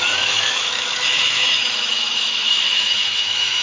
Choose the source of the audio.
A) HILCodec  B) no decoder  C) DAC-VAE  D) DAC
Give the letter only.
C